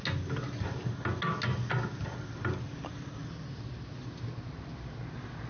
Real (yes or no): yes